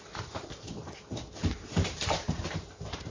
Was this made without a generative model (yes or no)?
no